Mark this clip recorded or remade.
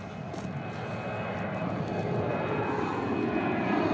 recorded